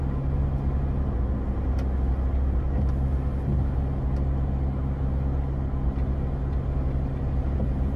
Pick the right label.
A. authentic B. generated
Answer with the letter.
A